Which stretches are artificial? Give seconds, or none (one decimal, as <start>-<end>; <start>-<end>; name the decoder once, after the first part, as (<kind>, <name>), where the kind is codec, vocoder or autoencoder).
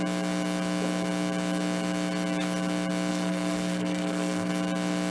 3.1-4.5 (codec, SNAC)